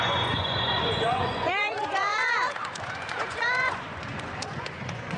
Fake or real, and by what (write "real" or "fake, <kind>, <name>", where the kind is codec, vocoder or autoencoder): fake, vocoder, Vocos